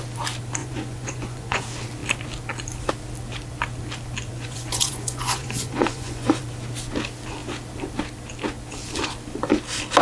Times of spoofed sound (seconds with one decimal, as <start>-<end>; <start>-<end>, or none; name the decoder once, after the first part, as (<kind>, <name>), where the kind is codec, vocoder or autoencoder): 0.6-1.6 (vocoder, Vocos); 4.3-6.4